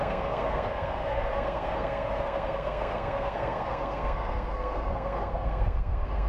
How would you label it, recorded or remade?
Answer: remade